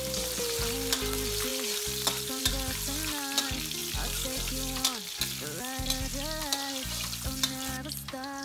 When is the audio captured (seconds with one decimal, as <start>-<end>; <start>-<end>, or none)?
0.0-8.4